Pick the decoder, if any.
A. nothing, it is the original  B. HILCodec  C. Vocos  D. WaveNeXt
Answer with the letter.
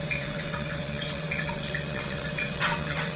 D